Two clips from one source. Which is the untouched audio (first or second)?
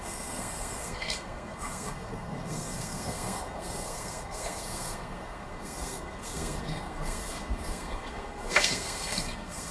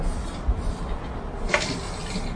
second